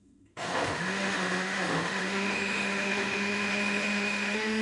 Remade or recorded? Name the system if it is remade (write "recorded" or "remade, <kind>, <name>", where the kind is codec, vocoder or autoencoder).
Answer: remade, autoencoder, DAC-VAE